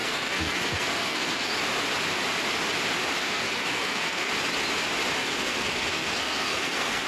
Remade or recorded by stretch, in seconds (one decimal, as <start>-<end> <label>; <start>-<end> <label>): 0.0-1.5 remade; 1.5-3.2 recorded; 3.2-4.3 remade; 4.3-5.2 recorded; 5.2-7.1 remade